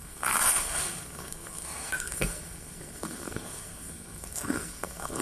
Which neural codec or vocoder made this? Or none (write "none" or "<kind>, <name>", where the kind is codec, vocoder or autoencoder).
codec, SNAC